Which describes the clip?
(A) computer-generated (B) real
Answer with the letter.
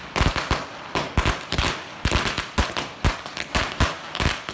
B